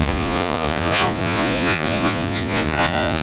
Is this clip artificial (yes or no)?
yes